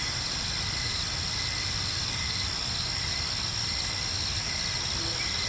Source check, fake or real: real